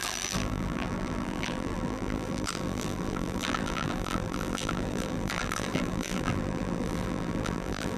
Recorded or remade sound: remade